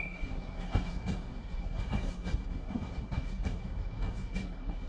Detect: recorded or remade remade